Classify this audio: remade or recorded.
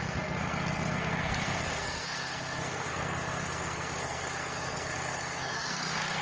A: remade